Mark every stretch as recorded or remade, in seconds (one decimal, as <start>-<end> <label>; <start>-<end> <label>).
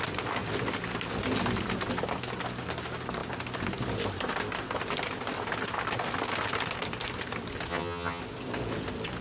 0.0-7.7 recorded; 7.7-8.2 remade; 8.2-9.2 recorded